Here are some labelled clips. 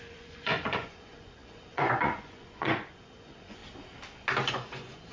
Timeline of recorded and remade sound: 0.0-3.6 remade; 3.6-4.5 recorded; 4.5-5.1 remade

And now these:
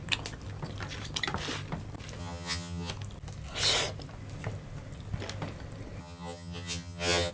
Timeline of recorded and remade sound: 0.0-2.2 recorded; 2.2-2.9 remade; 2.9-6.0 recorded; 6.0-7.3 remade